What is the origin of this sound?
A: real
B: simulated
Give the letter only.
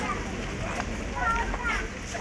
A